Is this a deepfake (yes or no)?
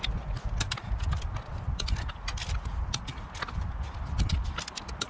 no